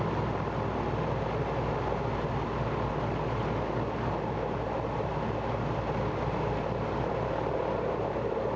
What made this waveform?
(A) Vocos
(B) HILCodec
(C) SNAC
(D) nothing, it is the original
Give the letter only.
D